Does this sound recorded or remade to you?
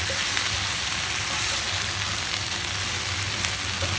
recorded